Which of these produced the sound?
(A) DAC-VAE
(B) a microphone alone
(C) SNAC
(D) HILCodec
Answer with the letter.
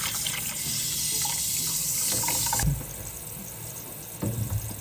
B